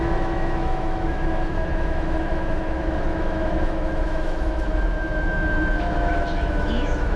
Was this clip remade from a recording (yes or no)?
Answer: yes